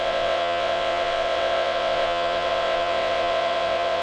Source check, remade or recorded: remade